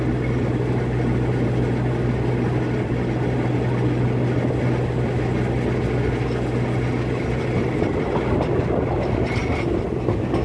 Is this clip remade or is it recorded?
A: recorded